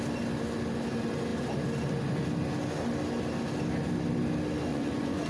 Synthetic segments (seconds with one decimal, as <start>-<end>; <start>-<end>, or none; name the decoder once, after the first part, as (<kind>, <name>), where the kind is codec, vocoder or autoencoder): 4.7-5.3 (vocoder, Vocos)